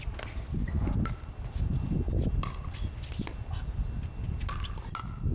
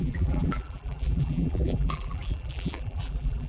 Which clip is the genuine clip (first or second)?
first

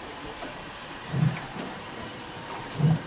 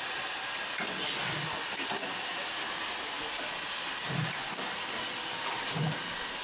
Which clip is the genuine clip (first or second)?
second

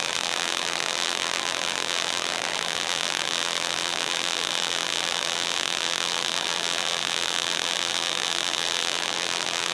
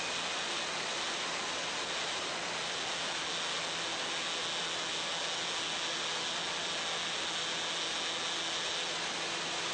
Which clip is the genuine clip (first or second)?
second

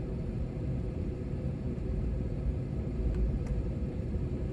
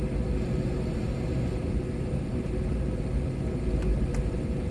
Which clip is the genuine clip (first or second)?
second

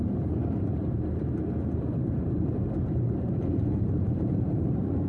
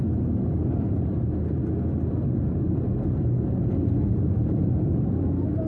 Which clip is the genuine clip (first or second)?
second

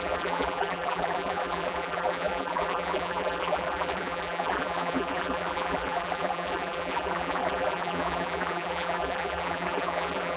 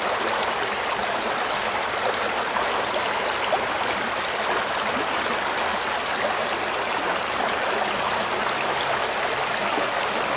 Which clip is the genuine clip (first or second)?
second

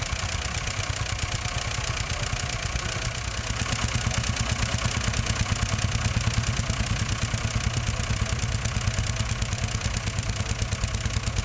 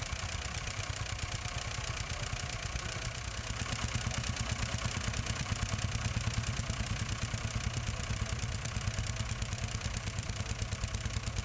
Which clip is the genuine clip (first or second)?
first